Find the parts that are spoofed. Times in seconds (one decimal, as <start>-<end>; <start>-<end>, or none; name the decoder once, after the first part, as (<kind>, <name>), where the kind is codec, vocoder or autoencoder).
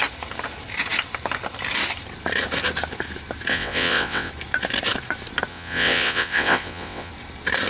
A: 3.5-4.3 (vocoder, WaveNeXt); 5.5-7.1